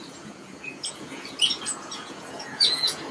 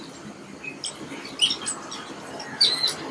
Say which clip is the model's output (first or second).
first